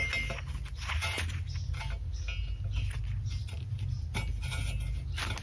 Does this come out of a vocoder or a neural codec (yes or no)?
no